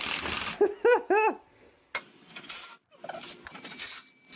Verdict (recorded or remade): recorded